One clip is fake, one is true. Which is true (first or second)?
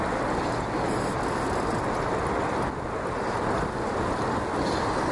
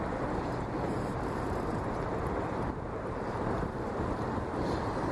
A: first